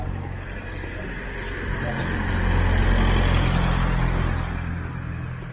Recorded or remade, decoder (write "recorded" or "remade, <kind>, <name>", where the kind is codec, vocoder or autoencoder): recorded